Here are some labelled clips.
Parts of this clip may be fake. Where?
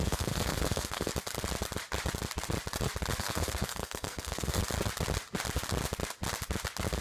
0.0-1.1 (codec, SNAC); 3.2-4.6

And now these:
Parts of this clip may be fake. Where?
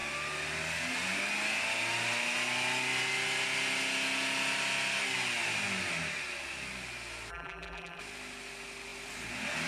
7.3-8.0 (vocoder, BigVGAN v2)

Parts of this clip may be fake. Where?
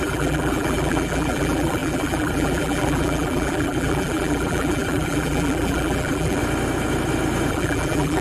0.0-6.4 (vocoder, BigVGAN v2); 7.5-8.2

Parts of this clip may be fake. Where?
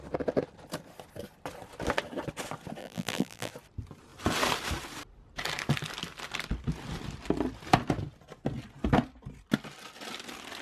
2.8-3.5 (vocoder, BigVGAN v2)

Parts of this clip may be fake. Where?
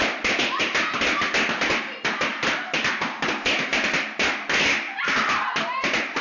0.0-0.6 (vocoder, BigVGAN v2); 2.3-2.9; 3.7-5.2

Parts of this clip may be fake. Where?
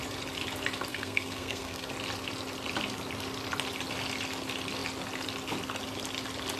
0.9-1.9 (codec, SNAC)